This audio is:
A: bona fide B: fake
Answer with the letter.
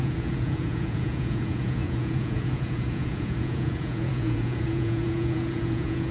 B